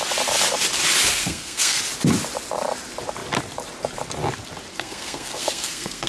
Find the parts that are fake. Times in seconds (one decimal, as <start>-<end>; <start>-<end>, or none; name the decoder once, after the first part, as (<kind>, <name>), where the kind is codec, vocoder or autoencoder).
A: 1.2-1.8 (codec, SNAC); 4.7-6.1